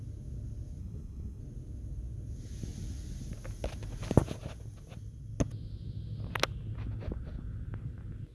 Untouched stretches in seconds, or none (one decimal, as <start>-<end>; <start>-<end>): 0.0-0.8; 1.4-8.3